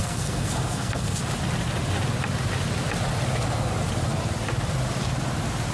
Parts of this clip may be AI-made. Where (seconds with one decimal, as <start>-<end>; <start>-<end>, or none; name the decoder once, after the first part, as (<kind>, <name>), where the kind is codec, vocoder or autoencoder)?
0.0-1.2 (codec, SNAC)